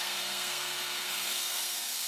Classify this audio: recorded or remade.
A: remade